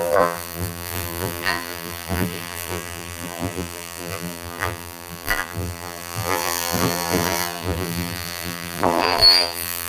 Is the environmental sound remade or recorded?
remade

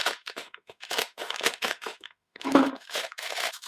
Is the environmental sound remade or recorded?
remade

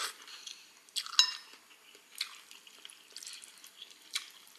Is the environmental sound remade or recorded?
recorded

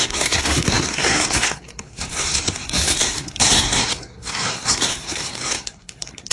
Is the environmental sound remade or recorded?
remade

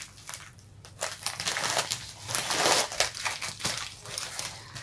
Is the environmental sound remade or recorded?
recorded